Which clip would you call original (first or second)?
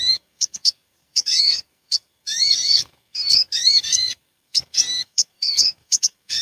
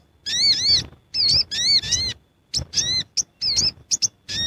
second